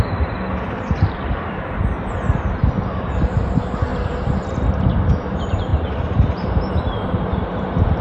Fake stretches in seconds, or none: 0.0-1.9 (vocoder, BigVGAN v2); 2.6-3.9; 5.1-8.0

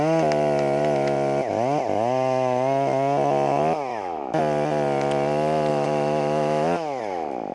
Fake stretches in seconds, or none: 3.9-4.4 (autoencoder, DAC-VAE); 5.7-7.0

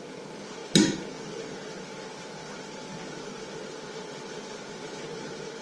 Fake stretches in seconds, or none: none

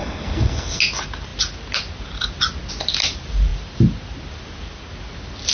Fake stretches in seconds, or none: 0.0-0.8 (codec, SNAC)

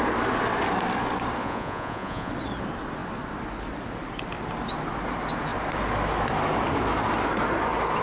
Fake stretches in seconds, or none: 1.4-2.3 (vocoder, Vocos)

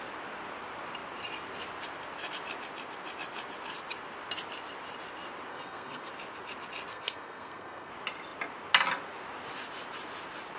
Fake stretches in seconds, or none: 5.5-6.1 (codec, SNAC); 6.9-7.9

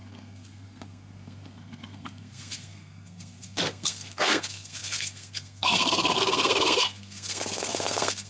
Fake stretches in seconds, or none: 0.0-8.3 (codec, SNAC)

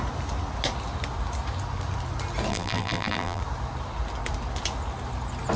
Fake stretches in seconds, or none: 2.5-3.4 (vocoder, BigVGAN v2)